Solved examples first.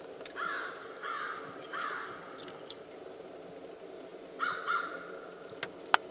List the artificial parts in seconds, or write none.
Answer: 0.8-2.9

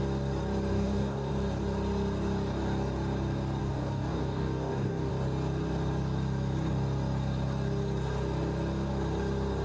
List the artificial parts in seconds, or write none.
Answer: 0.7-1.3; 3.6-5.1

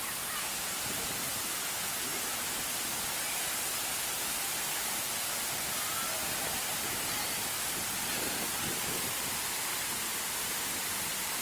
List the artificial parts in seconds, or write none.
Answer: none

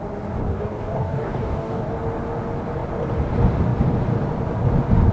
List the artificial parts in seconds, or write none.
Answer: 0.4-1.9

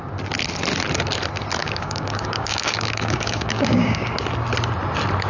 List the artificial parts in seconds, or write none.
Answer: 1.6-4.1

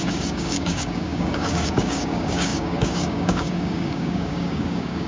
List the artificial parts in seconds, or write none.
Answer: 0.0-5.1

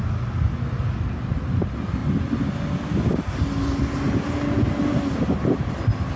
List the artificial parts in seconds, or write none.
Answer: none

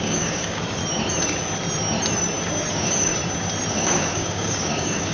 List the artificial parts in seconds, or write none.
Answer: 0.0-0.8; 2.7-3.1; 3.7-5.1